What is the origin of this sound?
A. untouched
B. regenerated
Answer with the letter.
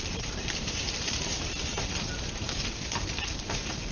B